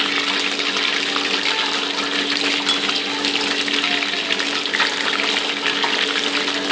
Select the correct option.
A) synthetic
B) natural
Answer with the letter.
B